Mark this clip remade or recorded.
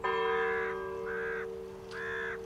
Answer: recorded